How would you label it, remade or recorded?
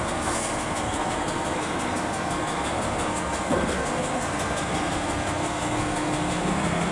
remade